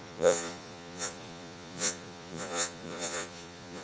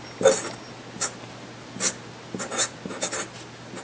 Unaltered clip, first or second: second